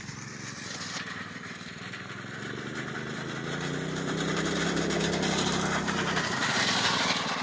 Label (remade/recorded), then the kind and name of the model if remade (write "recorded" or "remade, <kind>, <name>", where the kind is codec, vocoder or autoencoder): remade, vocoder, BigVGAN v2